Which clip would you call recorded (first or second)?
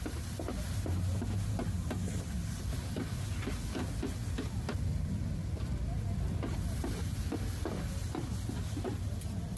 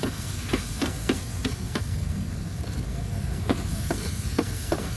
first